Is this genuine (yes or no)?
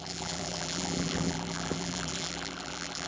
no